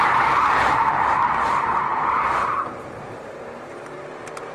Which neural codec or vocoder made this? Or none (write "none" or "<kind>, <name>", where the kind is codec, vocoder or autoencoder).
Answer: vocoder, BigVGAN v2